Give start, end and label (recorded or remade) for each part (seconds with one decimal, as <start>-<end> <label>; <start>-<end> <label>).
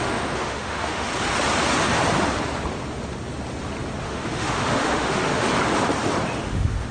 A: 0.0-1.1 remade; 1.1-4.0 recorded; 4.0-5.5 remade; 5.5-6.4 recorded; 6.4-6.9 remade